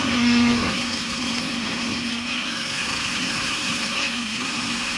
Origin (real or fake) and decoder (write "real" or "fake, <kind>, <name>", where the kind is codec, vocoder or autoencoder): fake, codec, SNAC